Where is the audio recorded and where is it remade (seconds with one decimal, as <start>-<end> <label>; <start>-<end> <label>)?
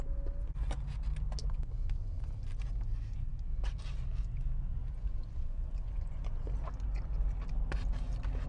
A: 0.0-1.4 recorded; 1.4-2.3 remade; 2.3-4.7 recorded; 4.7-6.2 remade; 6.2-8.5 recorded